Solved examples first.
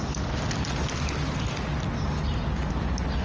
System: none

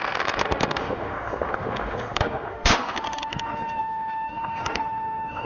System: autoencoder, DAC-VAE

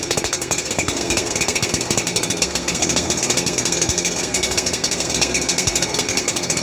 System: codec, SNAC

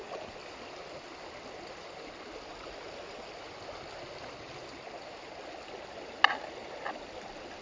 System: none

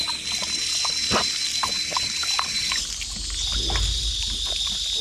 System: none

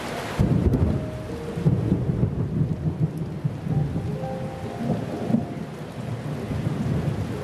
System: none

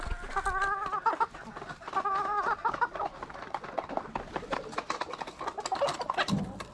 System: none